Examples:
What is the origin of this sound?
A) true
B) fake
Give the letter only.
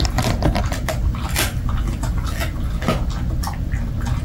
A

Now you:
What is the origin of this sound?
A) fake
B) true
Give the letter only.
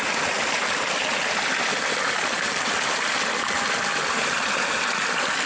B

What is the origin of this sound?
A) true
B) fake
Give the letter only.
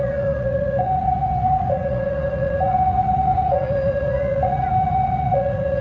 B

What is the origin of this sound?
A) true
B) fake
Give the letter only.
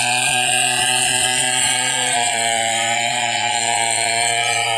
B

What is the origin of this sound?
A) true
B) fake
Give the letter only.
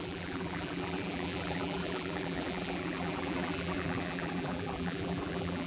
B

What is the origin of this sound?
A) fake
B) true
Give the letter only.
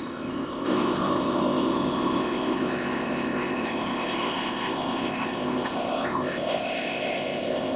A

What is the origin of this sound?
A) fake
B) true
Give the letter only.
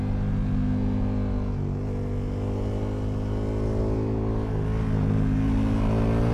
B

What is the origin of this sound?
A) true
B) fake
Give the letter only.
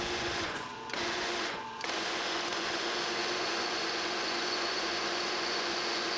B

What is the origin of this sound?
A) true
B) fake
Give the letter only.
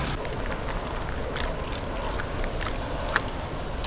A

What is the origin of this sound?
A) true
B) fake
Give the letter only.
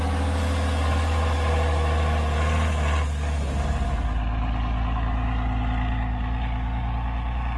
A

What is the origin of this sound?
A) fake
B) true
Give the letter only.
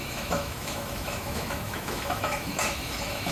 A